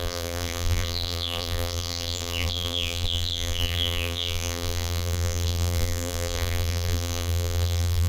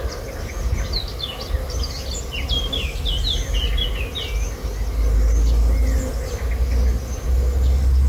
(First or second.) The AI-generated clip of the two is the first